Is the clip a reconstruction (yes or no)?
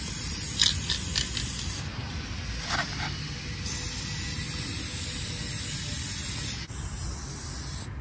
no